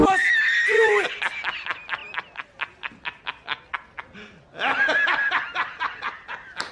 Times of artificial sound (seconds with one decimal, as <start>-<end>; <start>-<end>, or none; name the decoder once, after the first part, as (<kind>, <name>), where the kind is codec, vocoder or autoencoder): none